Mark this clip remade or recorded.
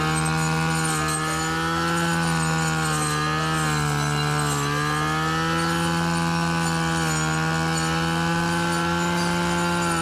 recorded